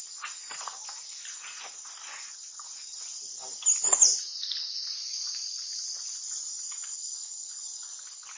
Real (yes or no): yes